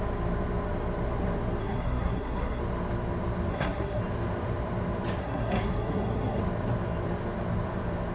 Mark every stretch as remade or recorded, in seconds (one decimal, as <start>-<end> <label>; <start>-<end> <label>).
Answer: 0.0-1.6 recorded; 1.6-2.6 remade; 2.6-3.5 recorded; 3.5-4.0 remade; 4.0-5.2 recorded; 5.2-6.4 remade; 6.4-8.1 recorded